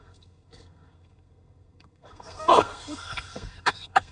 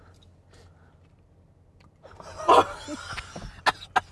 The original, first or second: second